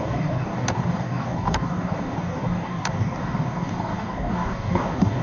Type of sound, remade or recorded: remade